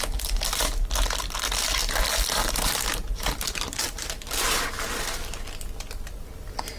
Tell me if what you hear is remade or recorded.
recorded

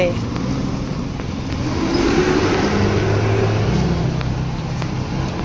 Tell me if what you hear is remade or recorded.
recorded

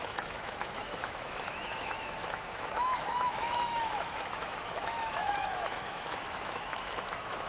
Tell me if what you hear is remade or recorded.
remade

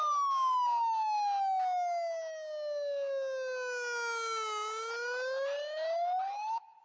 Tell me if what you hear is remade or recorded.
recorded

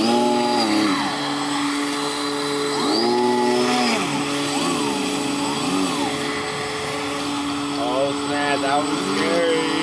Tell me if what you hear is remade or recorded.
recorded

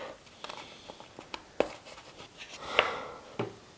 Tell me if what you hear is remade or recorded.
recorded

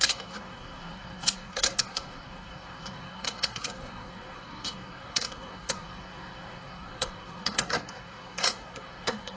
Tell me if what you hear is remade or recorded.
remade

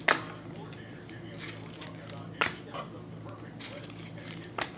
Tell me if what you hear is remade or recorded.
recorded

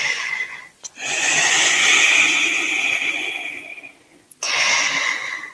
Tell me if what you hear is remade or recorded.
remade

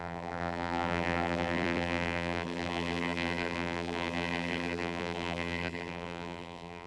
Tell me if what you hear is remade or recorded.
remade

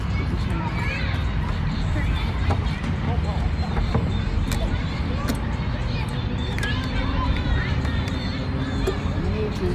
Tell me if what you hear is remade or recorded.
remade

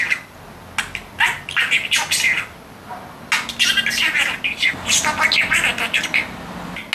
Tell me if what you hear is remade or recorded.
recorded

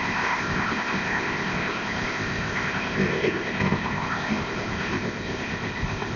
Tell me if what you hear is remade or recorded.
remade